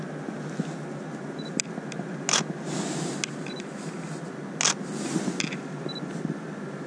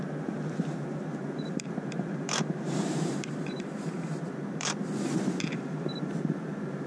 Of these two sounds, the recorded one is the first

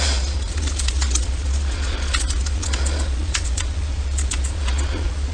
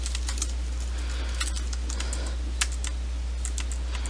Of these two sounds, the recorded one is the second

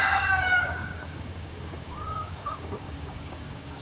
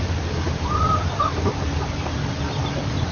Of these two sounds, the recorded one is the second